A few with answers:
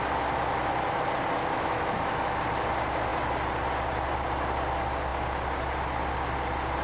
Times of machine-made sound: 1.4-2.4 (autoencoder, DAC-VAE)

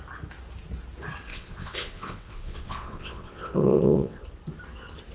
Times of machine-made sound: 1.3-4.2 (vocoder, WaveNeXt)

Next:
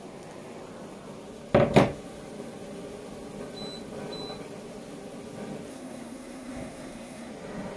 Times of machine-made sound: 5.7-7.3 (codec, SNAC)

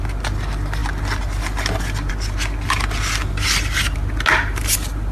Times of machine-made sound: none